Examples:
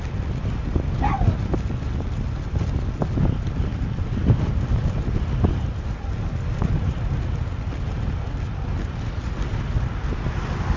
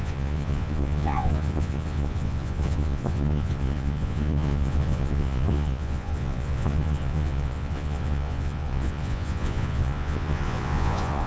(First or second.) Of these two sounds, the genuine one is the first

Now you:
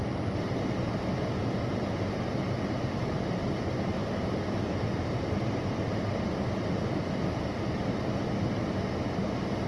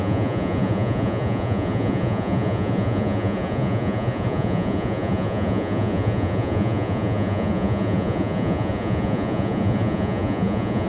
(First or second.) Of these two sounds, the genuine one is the first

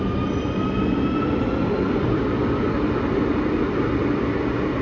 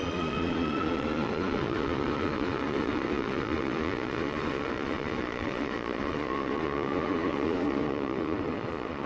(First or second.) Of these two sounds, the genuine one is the first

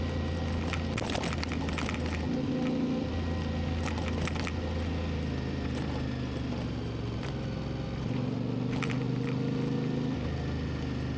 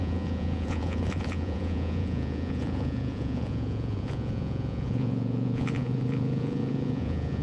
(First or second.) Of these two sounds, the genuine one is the first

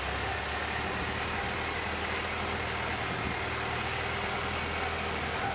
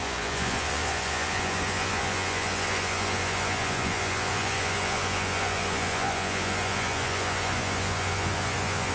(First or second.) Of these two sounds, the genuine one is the first